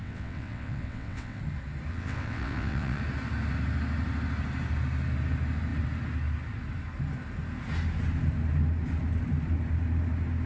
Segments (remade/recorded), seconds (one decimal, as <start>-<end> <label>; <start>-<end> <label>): 0.0-1.4 remade; 1.4-1.9 recorded; 1.9-3.0 remade; 3.0-10.5 recorded